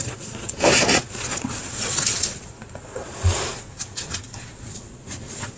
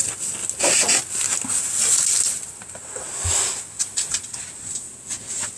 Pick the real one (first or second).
second